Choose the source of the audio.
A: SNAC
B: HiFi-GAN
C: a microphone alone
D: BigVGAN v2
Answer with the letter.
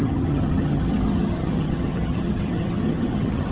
B